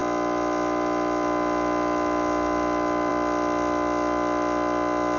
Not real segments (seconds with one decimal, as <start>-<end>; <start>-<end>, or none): none